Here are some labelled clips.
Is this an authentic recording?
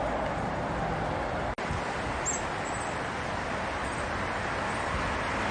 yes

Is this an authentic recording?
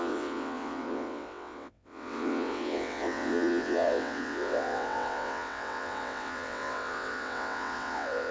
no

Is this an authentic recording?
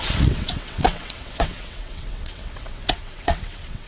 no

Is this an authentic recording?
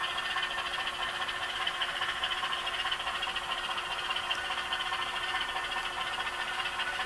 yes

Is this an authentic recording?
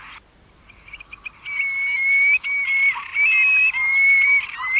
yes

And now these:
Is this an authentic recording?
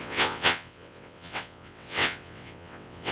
no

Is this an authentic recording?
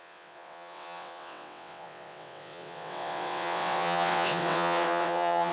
no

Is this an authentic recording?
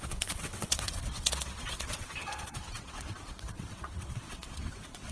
no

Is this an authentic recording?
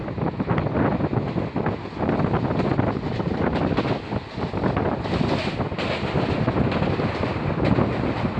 yes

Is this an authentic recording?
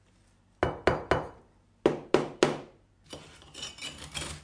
yes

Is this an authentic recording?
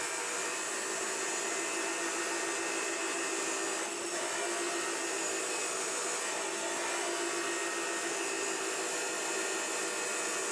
yes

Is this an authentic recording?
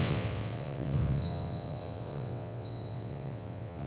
no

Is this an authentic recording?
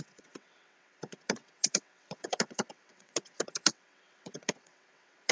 no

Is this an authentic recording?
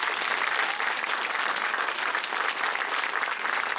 yes